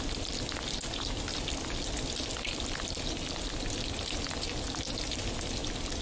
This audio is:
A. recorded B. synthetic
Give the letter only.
A